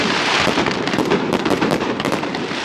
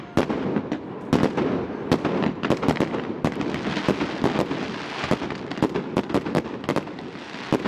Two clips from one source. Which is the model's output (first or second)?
first